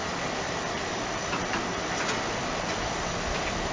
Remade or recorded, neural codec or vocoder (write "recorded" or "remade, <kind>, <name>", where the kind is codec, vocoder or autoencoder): recorded